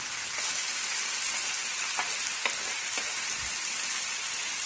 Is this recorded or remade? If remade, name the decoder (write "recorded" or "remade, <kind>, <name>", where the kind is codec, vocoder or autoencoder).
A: recorded